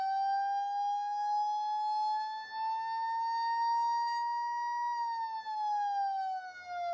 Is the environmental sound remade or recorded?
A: recorded